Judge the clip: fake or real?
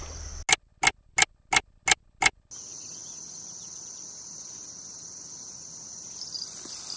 real